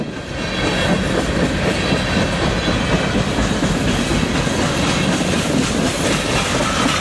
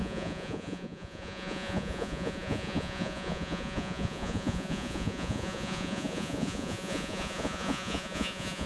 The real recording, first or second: first